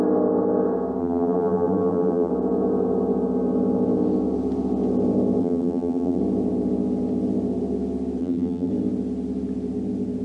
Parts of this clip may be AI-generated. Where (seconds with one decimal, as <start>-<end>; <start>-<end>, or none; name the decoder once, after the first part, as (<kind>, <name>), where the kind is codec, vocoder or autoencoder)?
1.0-2.3 (vocoder, BigVGAN v2); 5.4-6.2; 8.2-8.7